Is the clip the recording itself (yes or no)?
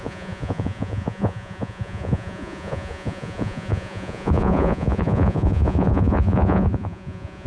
no